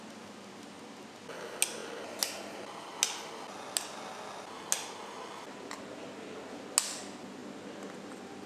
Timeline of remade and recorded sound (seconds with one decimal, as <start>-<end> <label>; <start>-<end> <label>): 0.0-8.5 recorded